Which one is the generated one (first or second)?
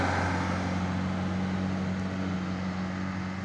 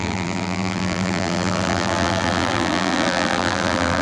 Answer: second